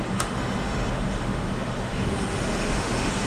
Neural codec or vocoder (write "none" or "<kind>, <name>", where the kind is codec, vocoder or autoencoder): autoencoder, DAC-VAE